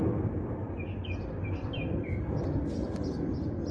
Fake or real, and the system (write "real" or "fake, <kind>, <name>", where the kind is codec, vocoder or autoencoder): real